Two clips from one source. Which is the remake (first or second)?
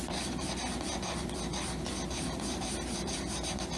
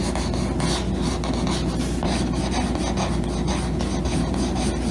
first